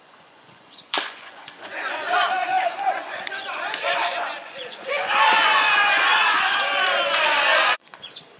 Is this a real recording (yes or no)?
no